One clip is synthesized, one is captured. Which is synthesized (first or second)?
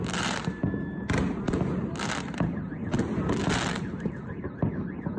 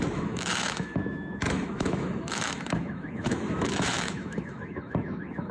second